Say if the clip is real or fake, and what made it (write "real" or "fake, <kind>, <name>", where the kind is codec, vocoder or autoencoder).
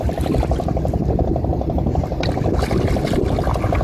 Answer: real